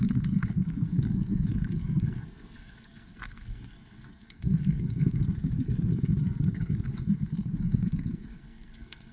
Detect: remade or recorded remade